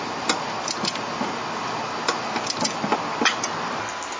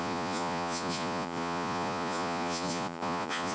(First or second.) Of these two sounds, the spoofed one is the second